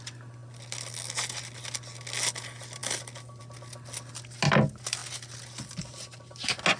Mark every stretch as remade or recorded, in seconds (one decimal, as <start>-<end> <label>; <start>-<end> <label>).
0.0-6.8 recorded